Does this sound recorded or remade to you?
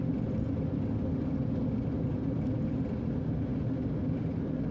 recorded